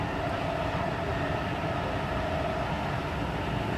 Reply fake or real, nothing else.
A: real